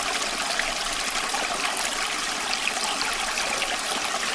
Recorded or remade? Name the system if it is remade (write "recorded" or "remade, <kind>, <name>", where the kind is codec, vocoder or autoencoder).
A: recorded